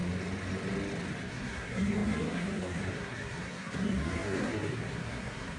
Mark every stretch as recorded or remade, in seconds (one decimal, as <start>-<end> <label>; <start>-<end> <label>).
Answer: 0.0-1.3 recorded; 1.3-5.6 remade